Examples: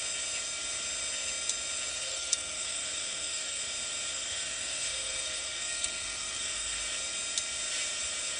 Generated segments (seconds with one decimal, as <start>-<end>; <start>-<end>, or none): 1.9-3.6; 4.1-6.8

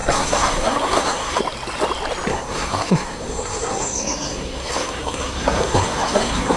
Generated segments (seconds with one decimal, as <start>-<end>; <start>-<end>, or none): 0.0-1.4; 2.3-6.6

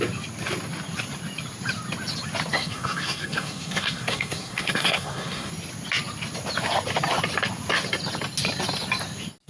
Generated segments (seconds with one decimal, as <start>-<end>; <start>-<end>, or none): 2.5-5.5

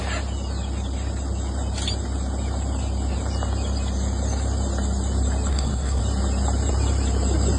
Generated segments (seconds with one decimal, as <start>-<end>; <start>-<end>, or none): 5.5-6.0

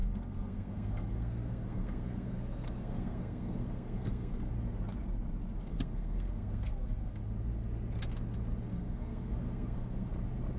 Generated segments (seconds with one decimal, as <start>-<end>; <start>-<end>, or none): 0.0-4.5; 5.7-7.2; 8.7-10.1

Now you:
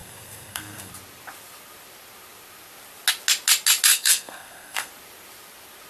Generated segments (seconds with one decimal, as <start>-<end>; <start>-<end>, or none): 0.0-0.9; 3.9-4.9